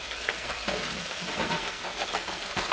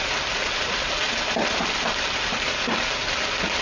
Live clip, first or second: second